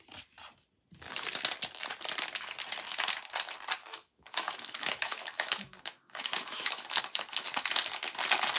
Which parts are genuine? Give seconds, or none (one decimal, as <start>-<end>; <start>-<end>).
0.0-3.8; 7.0-8.6